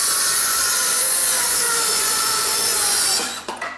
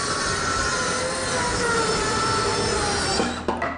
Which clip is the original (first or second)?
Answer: second